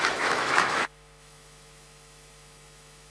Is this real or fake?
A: fake